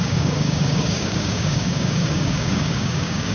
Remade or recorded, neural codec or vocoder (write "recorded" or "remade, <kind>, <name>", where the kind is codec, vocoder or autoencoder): remade, codec, DAC